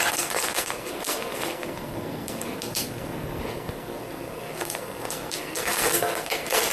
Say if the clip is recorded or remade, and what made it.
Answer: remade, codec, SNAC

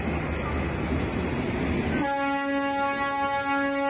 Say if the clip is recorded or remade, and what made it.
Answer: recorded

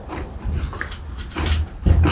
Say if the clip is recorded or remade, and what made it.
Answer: remade, vocoder, BigVGAN v2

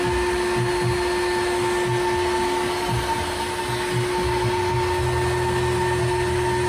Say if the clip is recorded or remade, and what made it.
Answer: recorded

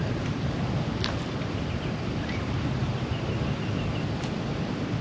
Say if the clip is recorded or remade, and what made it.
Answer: recorded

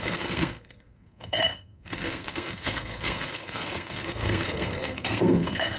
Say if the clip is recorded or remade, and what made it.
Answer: remade, codec, SNAC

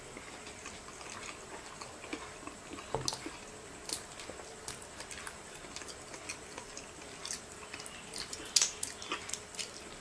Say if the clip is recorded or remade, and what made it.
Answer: recorded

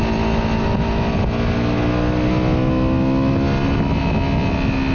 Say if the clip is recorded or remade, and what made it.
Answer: recorded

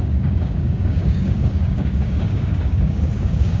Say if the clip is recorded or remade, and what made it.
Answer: remade, codec, DAC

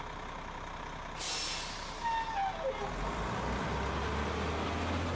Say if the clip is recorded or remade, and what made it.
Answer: recorded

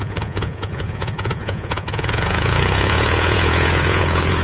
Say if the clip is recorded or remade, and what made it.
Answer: remade, vocoder, Vocos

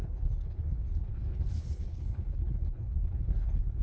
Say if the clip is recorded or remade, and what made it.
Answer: remade, codec, HILCodec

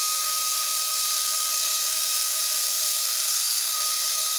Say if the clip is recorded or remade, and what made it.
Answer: remade, codec, SNAC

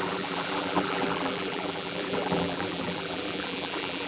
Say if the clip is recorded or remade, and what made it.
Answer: remade, vocoder, BigVGAN v2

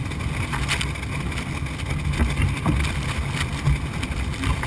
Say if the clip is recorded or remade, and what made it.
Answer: recorded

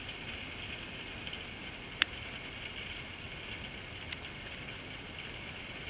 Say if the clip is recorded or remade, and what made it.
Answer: recorded